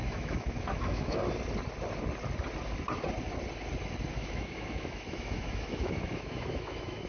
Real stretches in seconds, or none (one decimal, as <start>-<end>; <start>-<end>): 1.2-4.1